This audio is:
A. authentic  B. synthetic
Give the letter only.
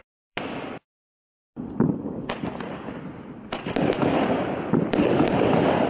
B